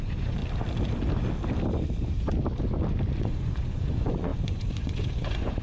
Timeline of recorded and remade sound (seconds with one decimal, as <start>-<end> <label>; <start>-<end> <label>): 0.0-0.4 remade; 0.4-3.2 recorded; 3.2-5.6 remade